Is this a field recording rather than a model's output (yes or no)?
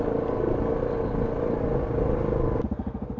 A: yes